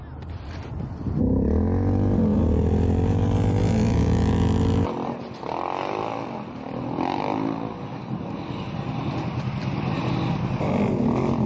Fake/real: real